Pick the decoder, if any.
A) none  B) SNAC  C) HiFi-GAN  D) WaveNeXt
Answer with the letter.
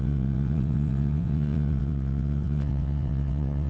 D